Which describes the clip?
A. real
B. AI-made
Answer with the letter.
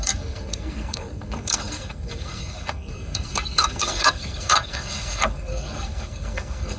B